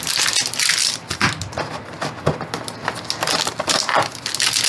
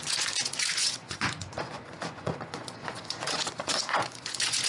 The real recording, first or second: first